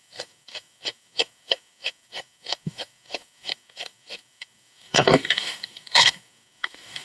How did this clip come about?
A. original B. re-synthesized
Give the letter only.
B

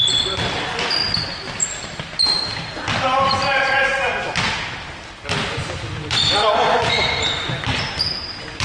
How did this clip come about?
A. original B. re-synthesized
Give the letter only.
A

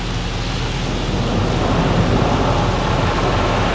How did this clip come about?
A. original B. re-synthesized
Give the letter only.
A